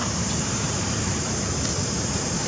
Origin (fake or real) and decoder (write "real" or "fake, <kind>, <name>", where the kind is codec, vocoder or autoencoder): fake, vocoder, BigVGAN v2